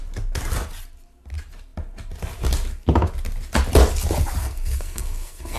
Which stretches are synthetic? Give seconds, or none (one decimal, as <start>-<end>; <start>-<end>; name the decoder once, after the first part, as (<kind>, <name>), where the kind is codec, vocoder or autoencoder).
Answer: 4.4-5.6 (codec, SNAC)